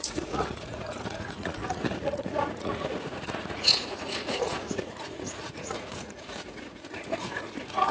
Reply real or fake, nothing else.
fake